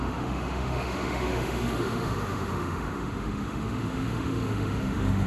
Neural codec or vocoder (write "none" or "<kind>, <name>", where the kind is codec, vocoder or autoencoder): autoencoder, DAC-VAE